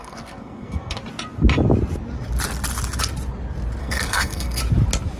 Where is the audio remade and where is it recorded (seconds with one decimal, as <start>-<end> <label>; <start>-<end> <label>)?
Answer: 0.0-1.0 remade; 1.0-3.8 recorded; 3.8-4.6 remade; 4.6-5.2 recorded